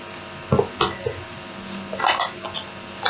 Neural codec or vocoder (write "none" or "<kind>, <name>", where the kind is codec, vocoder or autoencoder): none